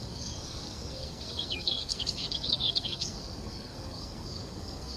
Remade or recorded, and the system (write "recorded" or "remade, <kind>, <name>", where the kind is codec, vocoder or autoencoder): remade, codec, SNAC